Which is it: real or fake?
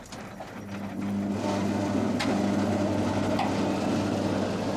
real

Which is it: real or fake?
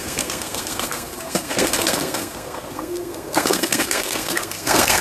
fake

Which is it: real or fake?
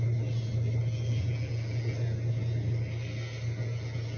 real